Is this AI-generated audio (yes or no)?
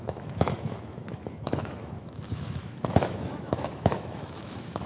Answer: yes